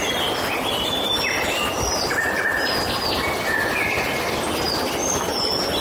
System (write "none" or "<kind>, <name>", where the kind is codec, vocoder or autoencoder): none